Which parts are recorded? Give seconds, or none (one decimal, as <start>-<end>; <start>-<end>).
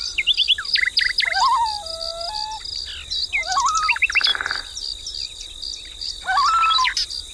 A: 0.0-7.3